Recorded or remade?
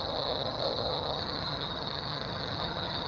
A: remade